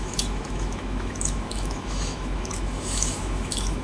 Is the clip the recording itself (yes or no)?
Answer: no